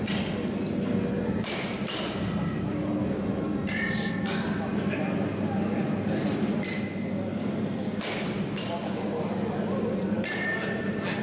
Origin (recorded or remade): recorded